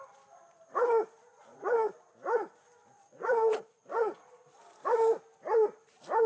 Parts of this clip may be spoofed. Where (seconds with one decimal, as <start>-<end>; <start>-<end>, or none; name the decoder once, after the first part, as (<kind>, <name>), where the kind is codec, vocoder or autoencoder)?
1.3-1.9 (vocoder, Vocos); 3.0-4.6